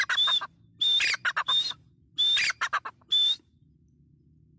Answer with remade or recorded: recorded